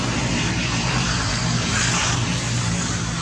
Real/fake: fake